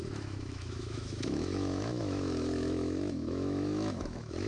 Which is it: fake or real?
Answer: fake